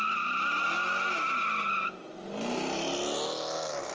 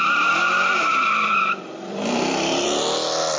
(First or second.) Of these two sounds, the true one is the first